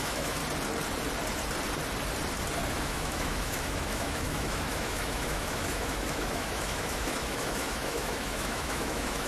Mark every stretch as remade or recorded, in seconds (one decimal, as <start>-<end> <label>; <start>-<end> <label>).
0.0-0.4 remade; 0.4-2.7 recorded; 2.7-9.3 remade